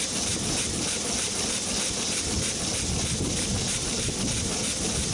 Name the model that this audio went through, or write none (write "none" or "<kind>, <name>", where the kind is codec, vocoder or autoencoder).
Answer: none